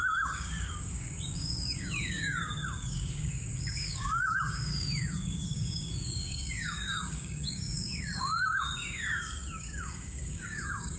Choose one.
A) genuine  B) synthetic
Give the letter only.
B